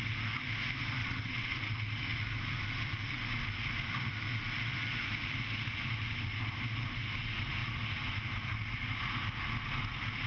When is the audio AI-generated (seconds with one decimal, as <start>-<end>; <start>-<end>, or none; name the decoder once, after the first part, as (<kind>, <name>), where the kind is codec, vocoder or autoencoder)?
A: 1.0-1.7 (vocoder, WaveNeXt)